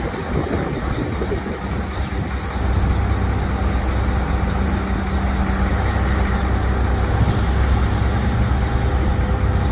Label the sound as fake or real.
real